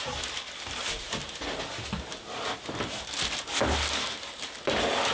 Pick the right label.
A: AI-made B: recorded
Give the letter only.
B